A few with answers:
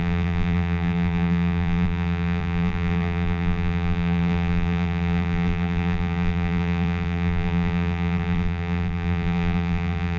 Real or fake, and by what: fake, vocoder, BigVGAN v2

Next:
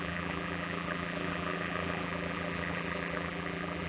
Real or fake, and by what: fake, vocoder, BigVGAN v2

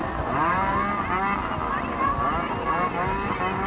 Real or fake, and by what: real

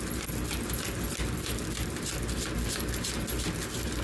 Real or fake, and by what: real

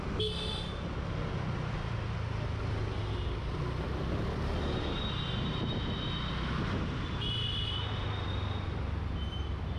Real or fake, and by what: real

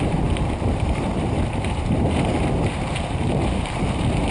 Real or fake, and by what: fake, vocoder, BigVGAN v2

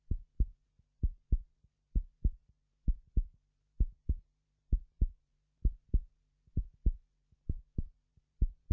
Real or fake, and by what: fake, vocoder, BigVGAN v2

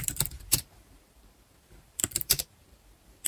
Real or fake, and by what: fake, vocoder, BigVGAN v2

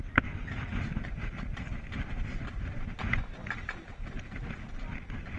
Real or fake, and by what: real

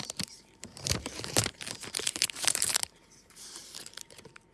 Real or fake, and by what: fake, vocoder, BigVGAN v2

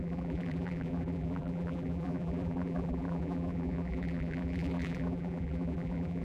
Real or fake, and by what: fake, vocoder, BigVGAN v2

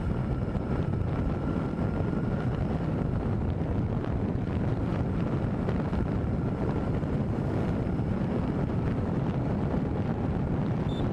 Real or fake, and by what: fake, vocoder, BigVGAN v2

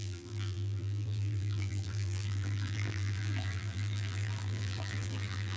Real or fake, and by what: fake, vocoder, BigVGAN v2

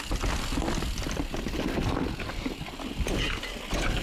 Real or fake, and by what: real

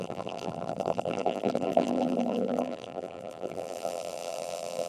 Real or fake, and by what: fake, vocoder, BigVGAN v2